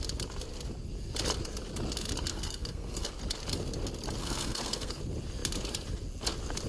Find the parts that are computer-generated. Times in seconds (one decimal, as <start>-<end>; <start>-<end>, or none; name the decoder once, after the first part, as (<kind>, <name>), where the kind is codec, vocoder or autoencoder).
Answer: 2.3-3.1 (codec, SNAC); 4.2-5.0